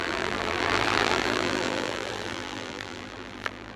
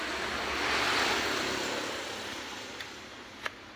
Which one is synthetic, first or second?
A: first